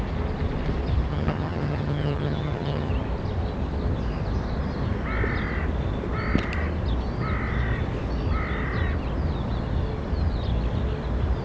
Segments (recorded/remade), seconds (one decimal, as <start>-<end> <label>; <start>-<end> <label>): 0.0-1.1 recorded; 1.1-2.9 remade; 2.9-11.4 recorded